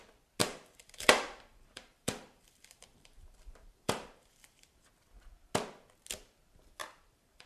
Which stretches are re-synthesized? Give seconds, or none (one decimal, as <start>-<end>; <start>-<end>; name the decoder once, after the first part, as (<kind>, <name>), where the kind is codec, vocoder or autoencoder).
0.4-4.9 (vocoder, BigVGAN v2); 6.8-7.5